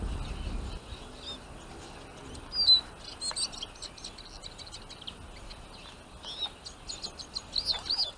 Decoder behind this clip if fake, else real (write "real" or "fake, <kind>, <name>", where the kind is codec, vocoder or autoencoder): real